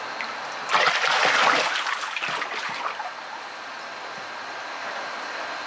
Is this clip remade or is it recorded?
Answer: recorded